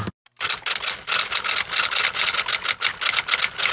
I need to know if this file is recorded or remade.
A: recorded